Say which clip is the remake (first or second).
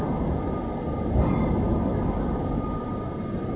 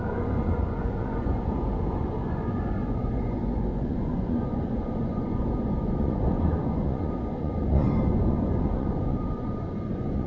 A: second